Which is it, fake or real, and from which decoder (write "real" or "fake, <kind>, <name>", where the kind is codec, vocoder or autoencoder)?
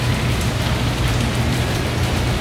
real